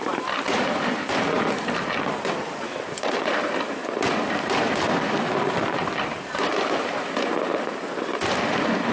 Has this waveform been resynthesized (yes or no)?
yes